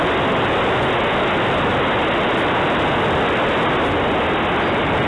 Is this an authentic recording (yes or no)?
yes